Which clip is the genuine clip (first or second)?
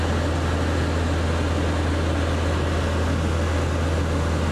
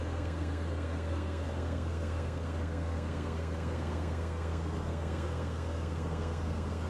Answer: first